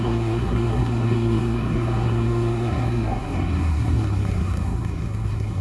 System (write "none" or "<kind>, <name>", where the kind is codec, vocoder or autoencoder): codec, SNAC